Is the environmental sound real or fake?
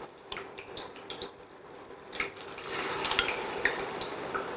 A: fake